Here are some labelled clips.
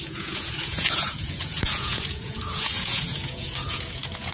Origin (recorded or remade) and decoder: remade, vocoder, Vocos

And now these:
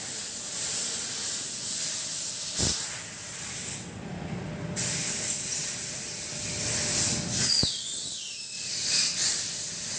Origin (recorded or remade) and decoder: recorded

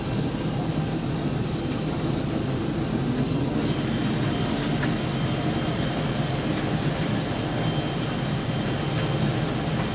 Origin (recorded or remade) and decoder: recorded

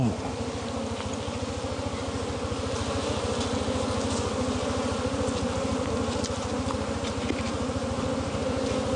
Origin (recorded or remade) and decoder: recorded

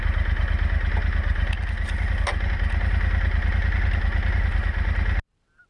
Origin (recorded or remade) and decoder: recorded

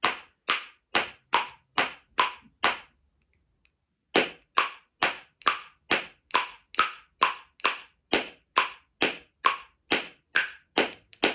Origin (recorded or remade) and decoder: recorded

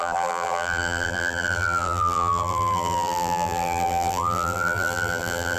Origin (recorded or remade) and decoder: remade, vocoder, BigVGAN v2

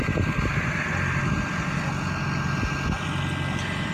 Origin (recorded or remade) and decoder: recorded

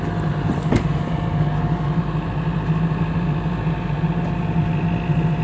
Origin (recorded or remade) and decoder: recorded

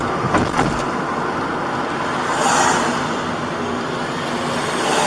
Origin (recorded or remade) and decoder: recorded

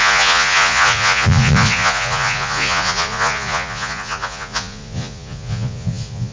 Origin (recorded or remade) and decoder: remade, vocoder, Vocos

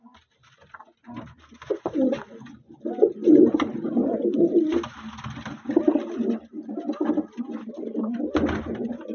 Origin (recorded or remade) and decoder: recorded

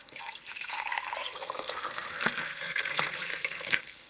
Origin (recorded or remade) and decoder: remade, codec, SNAC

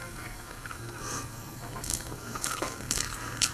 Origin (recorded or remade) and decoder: remade, codec, SNAC